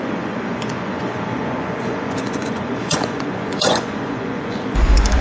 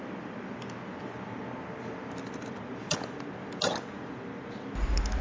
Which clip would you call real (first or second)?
second